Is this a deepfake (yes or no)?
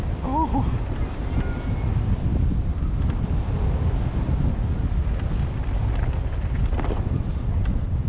no